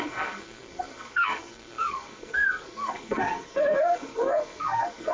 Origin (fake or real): fake